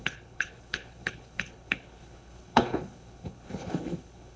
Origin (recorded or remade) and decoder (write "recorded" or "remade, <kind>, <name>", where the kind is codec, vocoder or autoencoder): remade, codec, HILCodec